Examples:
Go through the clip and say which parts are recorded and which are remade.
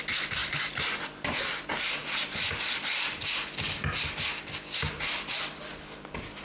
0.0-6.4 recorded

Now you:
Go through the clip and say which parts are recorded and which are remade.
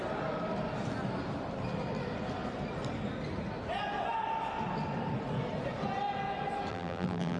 0.0-6.7 recorded; 6.7-7.4 remade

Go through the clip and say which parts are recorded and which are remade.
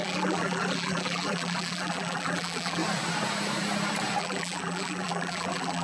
0.0-2.8 remade; 2.8-4.2 recorded; 4.2-5.8 remade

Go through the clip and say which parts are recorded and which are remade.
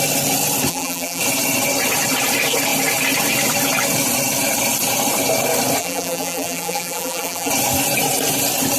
0.0-0.7 recorded; 0.7-1.2 remade; 1.2-5.8 recorded; 5.8-7.5 remade; 7.5-8.8 recorded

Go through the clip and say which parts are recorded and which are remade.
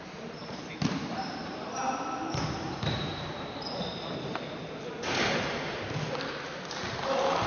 0.0-0.4 recorded; 0.4-4.9 remade; 4.9-7.5 recorded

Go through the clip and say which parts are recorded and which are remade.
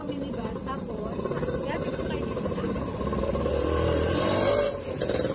0.0-5.3 remade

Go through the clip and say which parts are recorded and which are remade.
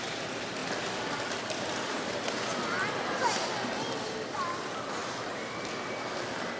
0.0-0.6 remade; 0.6-1.3 recorded; 1.3-2.5 remade; 2.5-3.4 recorded; 3.4-5.0 remade; 5.0-6.6 recorded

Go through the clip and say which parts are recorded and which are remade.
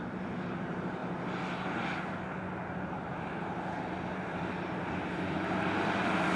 0.0-1.0 remade; 1.0-4.8 recorded; 4.8-6.4 remade